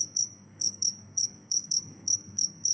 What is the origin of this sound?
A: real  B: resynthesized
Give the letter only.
B